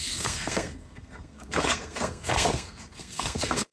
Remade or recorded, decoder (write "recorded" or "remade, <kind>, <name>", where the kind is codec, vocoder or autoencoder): remade, codec, SNAC